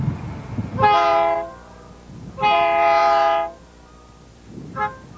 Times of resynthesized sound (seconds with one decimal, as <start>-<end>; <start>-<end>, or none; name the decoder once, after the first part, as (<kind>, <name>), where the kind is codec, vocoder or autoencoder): none